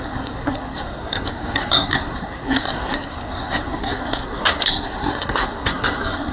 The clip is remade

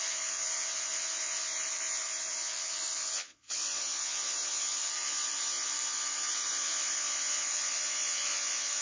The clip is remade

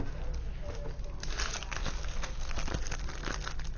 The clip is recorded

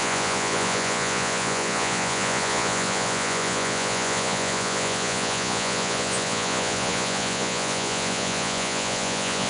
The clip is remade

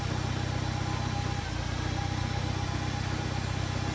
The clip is recorded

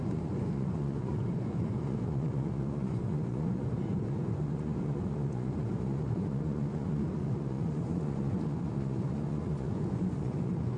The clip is remade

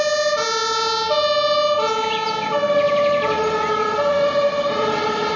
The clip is recorded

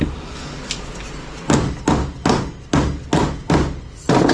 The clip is recorded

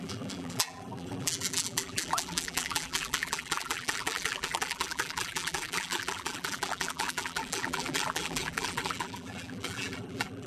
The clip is remade